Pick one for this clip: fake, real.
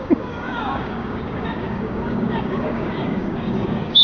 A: fake